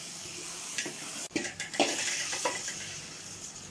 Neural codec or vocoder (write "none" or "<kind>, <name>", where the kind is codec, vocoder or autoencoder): codec, DAC